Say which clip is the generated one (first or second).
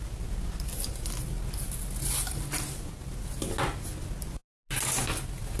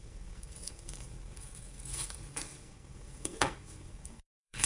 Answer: second